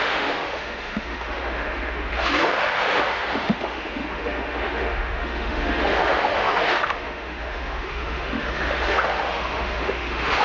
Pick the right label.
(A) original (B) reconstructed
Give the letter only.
B